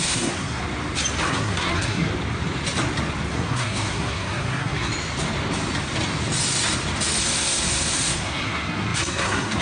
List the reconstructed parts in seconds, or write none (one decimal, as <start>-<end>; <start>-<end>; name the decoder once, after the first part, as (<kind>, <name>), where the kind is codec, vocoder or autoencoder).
0.0-0.6 (codec, SNAC); 1.3-2.1; 3.3-4.9; 7.2-9.6